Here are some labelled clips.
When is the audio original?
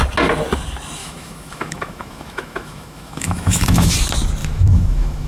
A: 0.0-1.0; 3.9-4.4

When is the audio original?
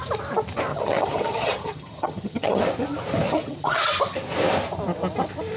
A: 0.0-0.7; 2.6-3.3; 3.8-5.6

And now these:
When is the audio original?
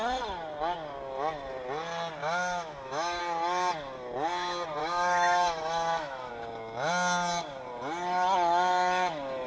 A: 0.0-2.2; 3.2-4.8; 6.3-9.5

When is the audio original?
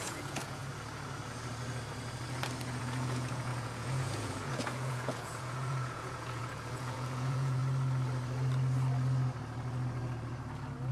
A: 0.6-2.8; 7.6-10.9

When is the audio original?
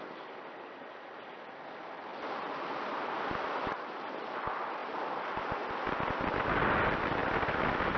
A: 0.0-2.1; 4.1-8.0